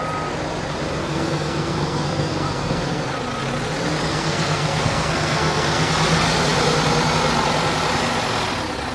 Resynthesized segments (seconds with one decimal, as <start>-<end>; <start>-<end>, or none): 1.0-3.0; 4.1-5.9